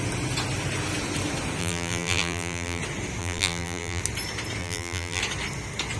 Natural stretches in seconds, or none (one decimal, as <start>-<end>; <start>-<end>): 0.0-1.6; 2.8-3.2; 4.0-4.6; 5.2-6.0